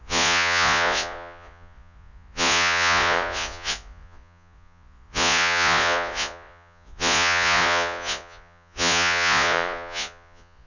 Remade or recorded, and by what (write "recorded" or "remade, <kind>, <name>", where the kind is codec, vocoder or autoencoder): remade, vocoder, Vocos